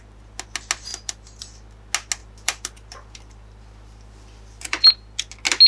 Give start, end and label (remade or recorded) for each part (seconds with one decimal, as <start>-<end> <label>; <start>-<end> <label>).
0.0-0.9 recorded; 0.9-1.4 remade; 1.4-2.2 recorded; 2.2-4.9 remade; 4.9-5.7 recorded